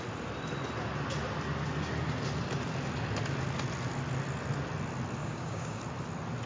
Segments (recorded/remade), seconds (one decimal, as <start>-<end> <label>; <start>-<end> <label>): 0.0-5.2 recorded; 5.2-5.8 remade; 5.8-6.5 recorded